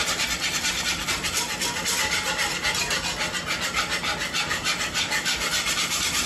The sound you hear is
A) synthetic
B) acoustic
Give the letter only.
B